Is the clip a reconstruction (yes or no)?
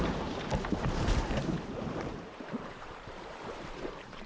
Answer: yes